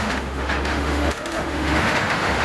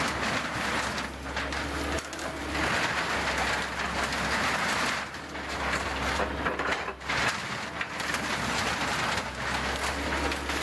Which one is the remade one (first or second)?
first